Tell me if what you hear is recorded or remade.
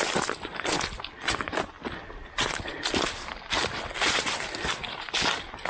recorded